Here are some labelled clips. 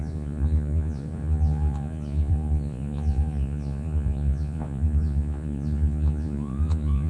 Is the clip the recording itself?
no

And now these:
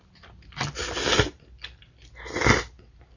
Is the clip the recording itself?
yes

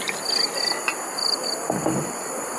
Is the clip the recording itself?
yes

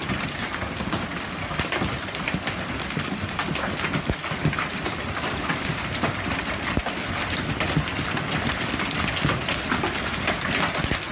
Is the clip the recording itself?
yes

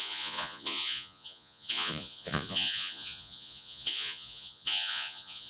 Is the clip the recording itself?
no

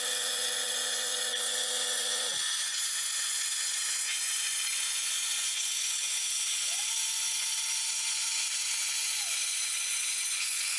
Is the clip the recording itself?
no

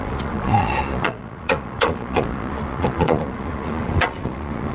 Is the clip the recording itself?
no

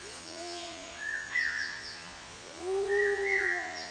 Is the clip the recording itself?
no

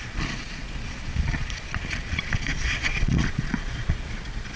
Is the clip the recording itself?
no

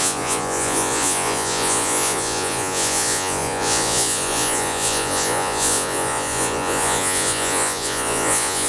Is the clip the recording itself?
no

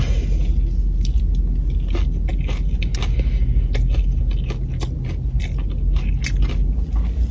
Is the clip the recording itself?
yes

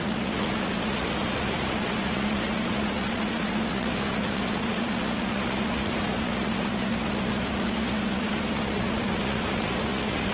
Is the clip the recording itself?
no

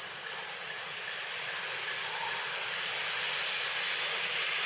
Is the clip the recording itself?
yes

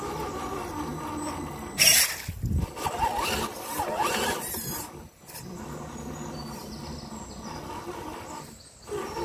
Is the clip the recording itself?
yes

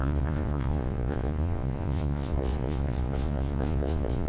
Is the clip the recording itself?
no